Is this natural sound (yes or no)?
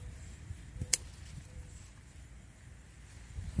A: no